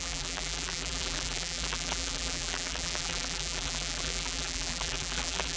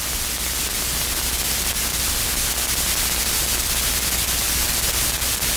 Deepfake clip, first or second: first